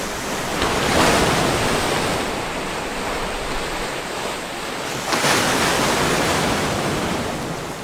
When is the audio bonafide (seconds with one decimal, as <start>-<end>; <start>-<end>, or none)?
0.0-7.8